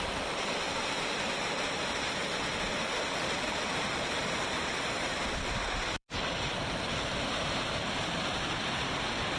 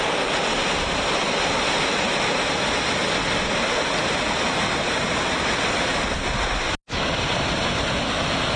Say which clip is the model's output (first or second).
first